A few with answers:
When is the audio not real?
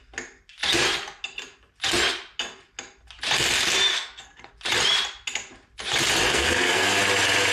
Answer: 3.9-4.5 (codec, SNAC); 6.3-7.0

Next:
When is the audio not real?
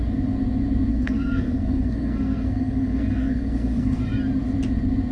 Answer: 0.9-4.0 (codec, SNAC)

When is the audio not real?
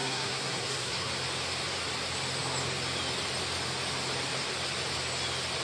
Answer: 0.0-1.1 (codec, SNAC)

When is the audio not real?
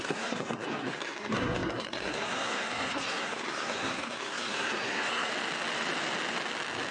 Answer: 0.0-5.3 (codec, SNAC)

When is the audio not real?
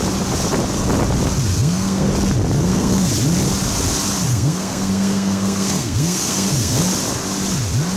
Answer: 1.5-2.1 (codec, SNAC); 2.6-3.1; 4.3-6.8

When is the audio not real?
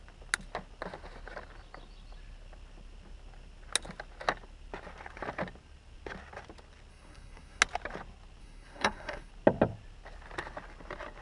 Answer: 6.9-7.6 (codec, SNAC); 8.4-9.3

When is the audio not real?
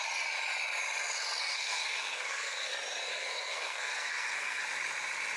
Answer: 1.5-2.7 (codec, SNAC); 3.1-4.6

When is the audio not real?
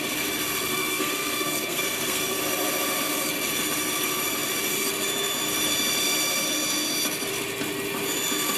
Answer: 0.7-2.4 (codec, SNAC)